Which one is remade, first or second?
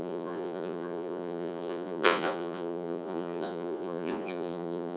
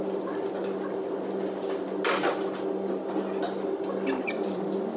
first